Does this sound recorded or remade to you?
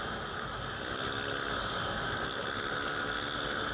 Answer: recorded